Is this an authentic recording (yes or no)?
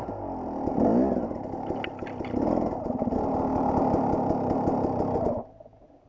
yes